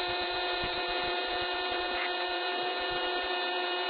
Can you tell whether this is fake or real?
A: fake